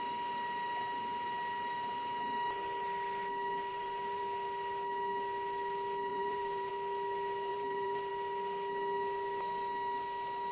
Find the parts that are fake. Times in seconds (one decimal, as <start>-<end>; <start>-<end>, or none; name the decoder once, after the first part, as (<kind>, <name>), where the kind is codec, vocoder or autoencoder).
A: 3.7-4.2 (vocoder, BigVGAN v2); 6.1-6.7; 7.5-8.1